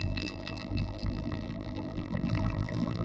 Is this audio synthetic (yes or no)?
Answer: yes